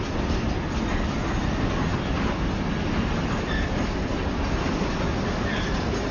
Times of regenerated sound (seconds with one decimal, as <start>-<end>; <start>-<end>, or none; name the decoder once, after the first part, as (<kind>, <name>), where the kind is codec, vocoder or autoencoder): none